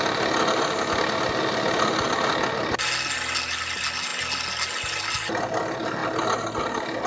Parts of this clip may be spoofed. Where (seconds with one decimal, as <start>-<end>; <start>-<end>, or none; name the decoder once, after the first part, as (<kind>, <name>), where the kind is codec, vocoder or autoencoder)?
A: none